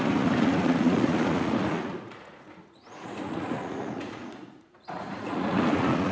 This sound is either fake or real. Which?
fake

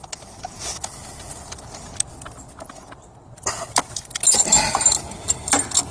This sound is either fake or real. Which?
real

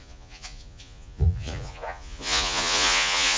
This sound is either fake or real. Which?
fake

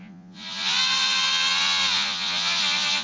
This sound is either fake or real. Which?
fake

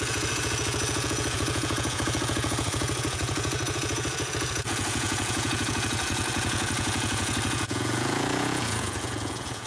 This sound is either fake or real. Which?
fake